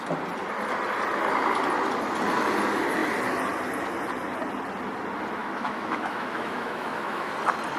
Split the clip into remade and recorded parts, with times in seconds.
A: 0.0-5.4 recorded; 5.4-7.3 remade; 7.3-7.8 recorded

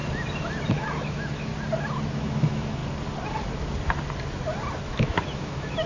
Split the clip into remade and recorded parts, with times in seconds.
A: 0.0-0.7 recorded; 0.7-1.5 remade; 1.5-2.1 recorded; 2.1-2.8 remade; 2.8-4.8 recorded; 4.8-5.9 remade

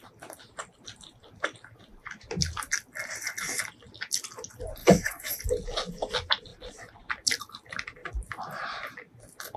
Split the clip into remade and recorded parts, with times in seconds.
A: 0.0-4.8 recorded; 4.8-5.4 remade; 5.4-9.6 recorded

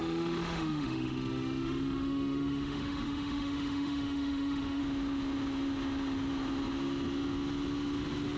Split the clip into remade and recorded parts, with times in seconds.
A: 0.0-4.8 remade; 4.8-8.4 recorded

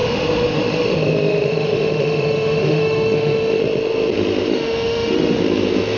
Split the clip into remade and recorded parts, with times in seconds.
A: 0.0-3.6 remade; 3.6-4.5 recorded; 4.5-5.4 remade; 5.4-6.0 recorded